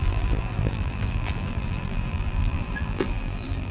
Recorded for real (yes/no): no